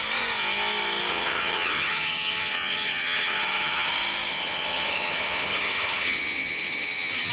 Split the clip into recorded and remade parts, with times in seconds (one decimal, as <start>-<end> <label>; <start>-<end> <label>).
0.0-1.1 recorded; 1.1-3.9 remade; 3.9-4.3 recorded; 4.3-7.3 remade